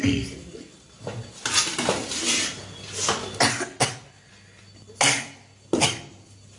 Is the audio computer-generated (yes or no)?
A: no